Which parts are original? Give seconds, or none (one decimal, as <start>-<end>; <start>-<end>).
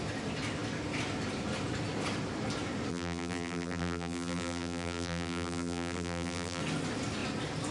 0.0-2.9; 6.6-7.7